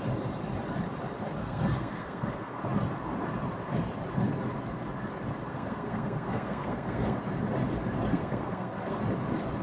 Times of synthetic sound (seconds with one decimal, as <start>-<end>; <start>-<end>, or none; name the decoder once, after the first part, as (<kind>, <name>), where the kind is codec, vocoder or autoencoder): 1.4-2.6 (codec, SNAC); 5.5-7.2; 8.1-9.0